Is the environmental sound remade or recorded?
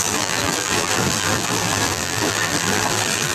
remade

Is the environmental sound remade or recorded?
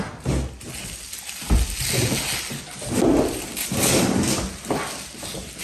recorded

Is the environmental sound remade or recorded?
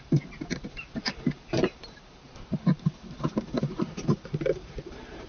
remade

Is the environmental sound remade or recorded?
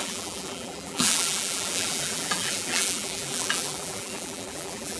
remade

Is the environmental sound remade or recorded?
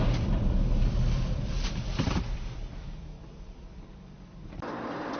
remade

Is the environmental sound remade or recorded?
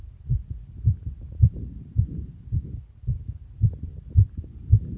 remade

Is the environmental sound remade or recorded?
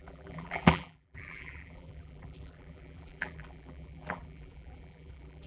remade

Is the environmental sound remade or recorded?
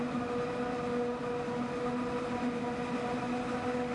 recorded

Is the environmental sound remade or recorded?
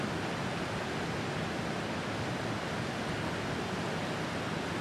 remade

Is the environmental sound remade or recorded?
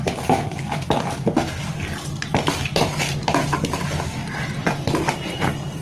recorded